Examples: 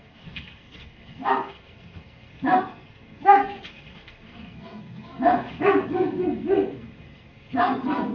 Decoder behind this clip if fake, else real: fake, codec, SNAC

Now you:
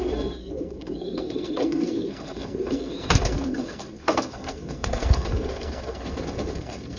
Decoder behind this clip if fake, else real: fake, codec, SNAC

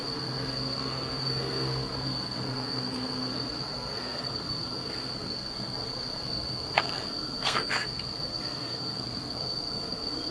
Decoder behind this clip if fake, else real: fake, codec, SNAC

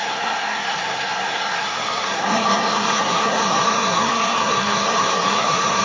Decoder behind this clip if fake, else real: fake, codec, SNAC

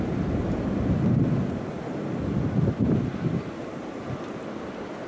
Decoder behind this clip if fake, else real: real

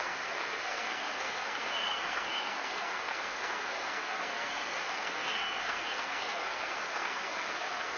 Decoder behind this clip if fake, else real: fake, codec, SNAC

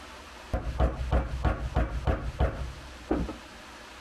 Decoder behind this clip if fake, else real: real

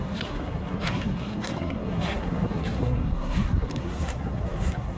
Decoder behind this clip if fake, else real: fake, codec, SNAC